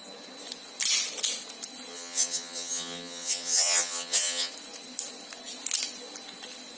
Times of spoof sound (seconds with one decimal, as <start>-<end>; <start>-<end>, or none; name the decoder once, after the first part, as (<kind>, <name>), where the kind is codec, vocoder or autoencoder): 1.9-4.5 (vocoder, HiFi-GAN)

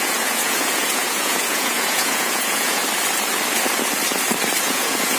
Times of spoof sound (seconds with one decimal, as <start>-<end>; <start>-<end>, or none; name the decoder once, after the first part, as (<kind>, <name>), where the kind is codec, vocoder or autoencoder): 0.0-2.8 (vocoder, Vocos); 4.6-5.2

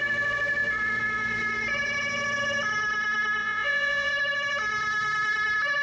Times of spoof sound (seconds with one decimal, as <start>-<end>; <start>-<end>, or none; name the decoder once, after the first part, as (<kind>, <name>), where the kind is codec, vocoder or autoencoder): 3.4-4.1 (vocoder, Vocos)

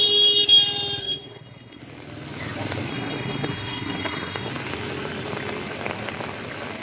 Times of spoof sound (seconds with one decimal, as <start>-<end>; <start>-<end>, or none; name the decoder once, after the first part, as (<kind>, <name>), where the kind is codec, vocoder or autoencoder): 1.0-1.8 (codec, SNAC); 2.9-4.5